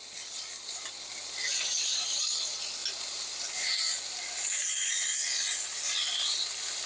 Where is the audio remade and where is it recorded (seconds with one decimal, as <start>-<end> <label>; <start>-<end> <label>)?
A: 0.0-6.9 recorded